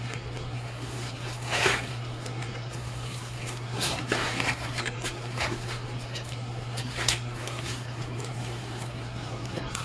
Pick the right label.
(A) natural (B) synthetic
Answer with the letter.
B